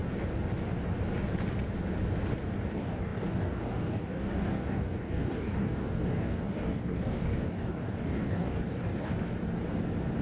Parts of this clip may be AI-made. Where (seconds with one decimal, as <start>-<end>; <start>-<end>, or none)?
2.7-9.1